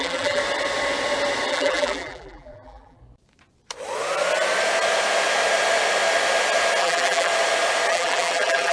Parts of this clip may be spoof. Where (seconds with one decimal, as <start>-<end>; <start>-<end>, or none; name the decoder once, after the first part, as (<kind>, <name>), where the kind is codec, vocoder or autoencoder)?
0.0-0.4 (vocoder, BigVGAN v2); 1.5-3.0; 6.8-7.3; 7.9-8.7